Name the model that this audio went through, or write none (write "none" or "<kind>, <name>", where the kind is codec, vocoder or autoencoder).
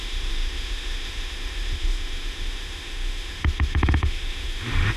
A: autoencoder, DAC-VAE